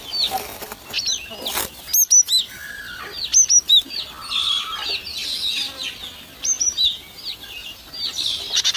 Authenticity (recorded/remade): recorded